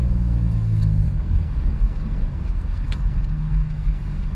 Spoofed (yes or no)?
yes